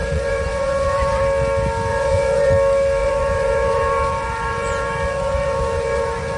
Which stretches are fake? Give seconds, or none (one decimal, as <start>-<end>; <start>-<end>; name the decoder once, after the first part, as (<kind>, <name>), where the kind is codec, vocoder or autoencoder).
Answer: 0.0-1.2 (vocoder, Vocos); 1.9-2.5; 3.0-6.4